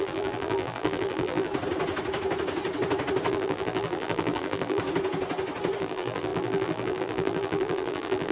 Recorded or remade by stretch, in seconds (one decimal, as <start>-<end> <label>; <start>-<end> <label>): 0.0-1.5 remade; 1.5-3.3 recorded; 3.3-4.8 remade; 4.8-5.8 recorded; 5.8-8.3 remade